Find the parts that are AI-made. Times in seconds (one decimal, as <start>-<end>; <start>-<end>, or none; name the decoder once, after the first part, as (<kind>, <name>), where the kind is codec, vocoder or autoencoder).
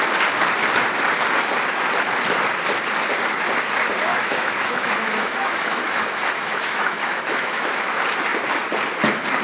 4.1-7.9 (autoencoder, DAC-VAE)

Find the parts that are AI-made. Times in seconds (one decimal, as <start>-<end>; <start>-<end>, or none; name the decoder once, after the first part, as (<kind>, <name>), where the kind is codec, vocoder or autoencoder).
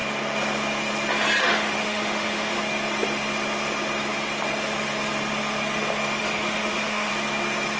1.4-2.6 (autoencoder, DAC-VAE); 6.2-7.1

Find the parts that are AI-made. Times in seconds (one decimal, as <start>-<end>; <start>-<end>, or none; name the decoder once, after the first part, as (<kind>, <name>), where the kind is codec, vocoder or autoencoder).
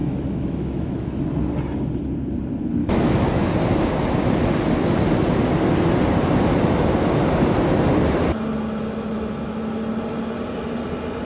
0.0-1.2 (autoencoder, DAC-VAE); 2.8-3.5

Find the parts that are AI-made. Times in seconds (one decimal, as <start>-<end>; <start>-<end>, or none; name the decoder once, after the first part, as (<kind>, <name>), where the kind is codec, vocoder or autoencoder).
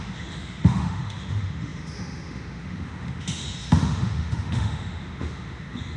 0.0-6.0 (autoencoder, DAC-VAE)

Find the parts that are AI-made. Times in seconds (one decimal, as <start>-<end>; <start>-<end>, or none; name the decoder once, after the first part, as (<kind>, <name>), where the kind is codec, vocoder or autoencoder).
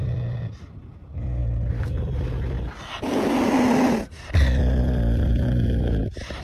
none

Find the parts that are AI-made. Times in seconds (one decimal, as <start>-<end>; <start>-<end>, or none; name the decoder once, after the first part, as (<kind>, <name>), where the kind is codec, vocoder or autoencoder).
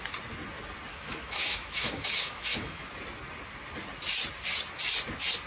0.9-2.9 (autoencoder, DAC-VAE)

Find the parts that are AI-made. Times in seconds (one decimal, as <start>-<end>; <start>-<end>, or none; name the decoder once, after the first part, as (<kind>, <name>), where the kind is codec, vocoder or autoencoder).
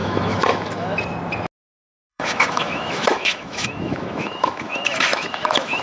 0.0-1.0 (autoencoder, DAC-VAE); 2.1-5.8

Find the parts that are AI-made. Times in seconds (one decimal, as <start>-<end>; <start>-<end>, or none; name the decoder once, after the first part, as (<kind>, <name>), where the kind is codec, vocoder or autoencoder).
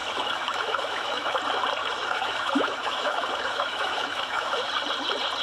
0.0-1.4 (autoencoder, DAC-VAE); 1.8-4.7